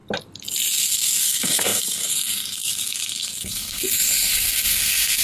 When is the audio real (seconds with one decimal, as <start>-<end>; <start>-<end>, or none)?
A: 0.0-0.7